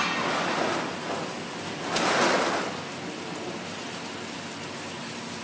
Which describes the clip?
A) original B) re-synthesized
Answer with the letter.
A